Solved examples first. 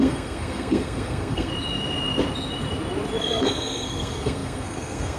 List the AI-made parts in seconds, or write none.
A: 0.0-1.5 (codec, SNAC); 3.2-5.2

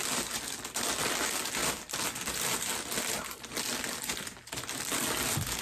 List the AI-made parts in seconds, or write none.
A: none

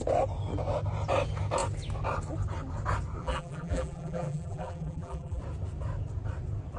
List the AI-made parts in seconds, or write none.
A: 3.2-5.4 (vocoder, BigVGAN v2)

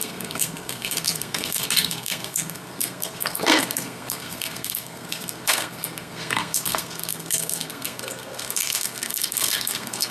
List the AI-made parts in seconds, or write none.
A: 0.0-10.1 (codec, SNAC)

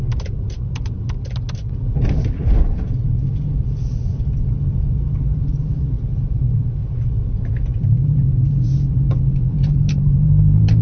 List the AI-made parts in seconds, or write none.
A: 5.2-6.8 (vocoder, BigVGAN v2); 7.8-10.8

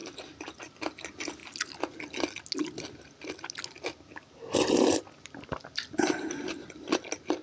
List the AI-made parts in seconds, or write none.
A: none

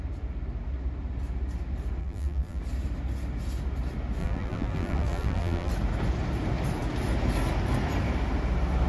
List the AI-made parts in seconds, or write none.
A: 2.0-2.6 (vocoder, BigVGAN v2); 4.2-5.7